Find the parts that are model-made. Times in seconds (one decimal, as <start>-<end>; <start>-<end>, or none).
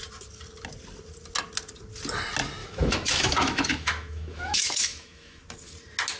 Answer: 2.6-5.4